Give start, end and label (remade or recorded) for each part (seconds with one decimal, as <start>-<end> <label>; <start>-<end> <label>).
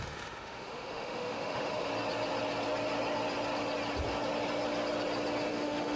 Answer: 0.0-1.9 remade; 1.9-5.5 recorded; 5.5-6.0 remade